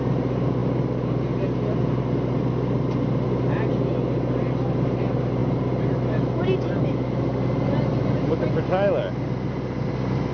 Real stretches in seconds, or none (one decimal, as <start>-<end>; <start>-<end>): 0.0-10.3

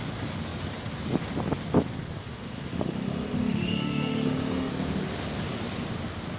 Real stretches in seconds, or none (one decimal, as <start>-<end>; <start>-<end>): 0.0-2.2; 4.7-6.4

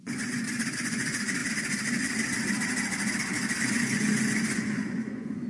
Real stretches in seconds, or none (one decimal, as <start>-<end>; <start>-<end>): 1.4-3.7

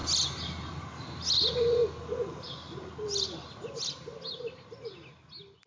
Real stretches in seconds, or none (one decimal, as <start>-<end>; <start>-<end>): 0.0-5.7